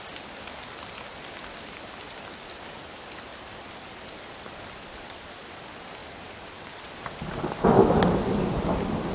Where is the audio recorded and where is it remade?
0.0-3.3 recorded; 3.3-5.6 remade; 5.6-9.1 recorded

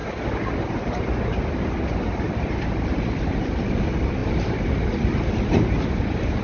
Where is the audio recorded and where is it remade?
0.0-6.4 recorded